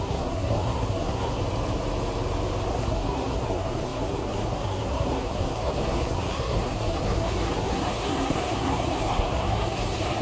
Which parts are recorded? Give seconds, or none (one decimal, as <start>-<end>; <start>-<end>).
1.4-2.7